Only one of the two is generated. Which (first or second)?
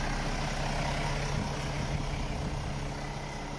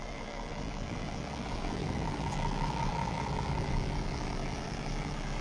second